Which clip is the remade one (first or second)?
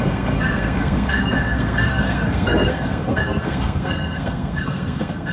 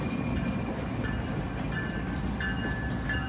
first